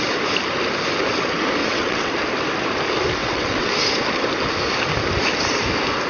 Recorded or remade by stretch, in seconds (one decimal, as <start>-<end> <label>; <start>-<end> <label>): 0.0-1.6 recorded; 1.6-2.1 remade; 2.1-3.2 recorded; 3.2-3.7 remade; 3.7-6.1 recorded